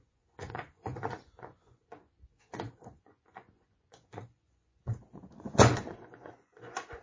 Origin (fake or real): fake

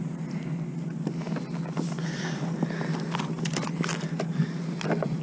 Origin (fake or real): real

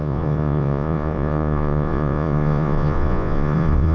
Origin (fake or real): fake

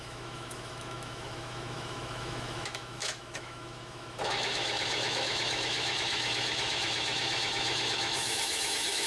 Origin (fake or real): fake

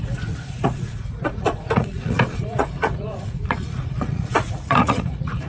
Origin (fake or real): fake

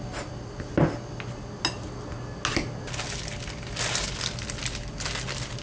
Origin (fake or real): real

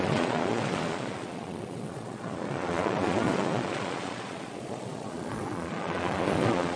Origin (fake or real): fake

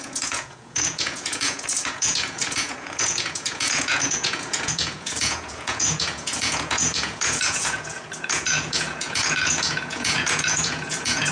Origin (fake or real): fake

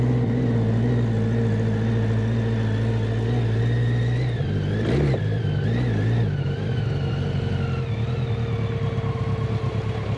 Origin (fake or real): real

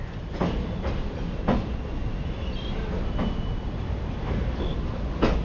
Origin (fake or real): real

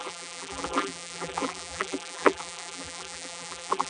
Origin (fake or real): fake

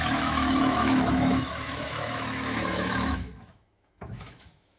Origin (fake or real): fake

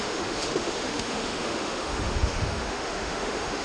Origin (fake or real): fake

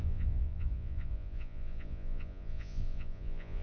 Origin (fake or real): fake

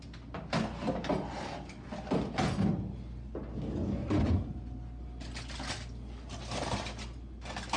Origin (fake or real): real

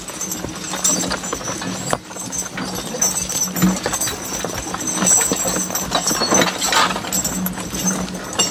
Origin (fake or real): real